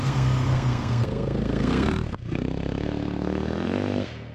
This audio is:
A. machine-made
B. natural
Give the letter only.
A